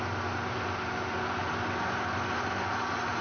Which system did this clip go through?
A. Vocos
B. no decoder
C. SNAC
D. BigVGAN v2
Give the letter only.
B